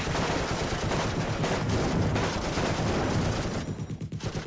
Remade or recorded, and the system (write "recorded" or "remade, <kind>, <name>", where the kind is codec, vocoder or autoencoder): recorded